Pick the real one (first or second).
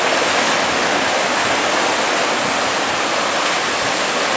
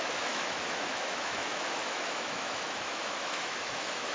first